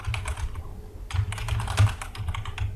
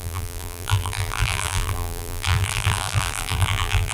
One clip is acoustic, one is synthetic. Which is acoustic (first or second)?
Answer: first